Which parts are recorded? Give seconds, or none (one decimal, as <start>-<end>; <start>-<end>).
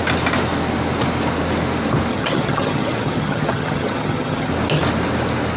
0.0-2.1; 4.5-5.6